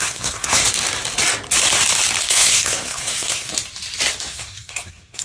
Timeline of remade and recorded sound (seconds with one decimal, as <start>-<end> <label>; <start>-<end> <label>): 0.0-0.6 remade; 0.6-2.2 recorded; 2.2-3.5 remade; 3.5-4.2 recorded; 4.2-5.2 remade